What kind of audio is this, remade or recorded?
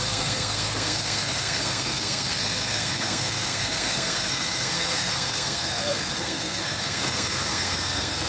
remade